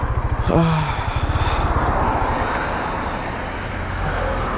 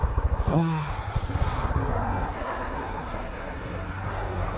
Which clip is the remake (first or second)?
second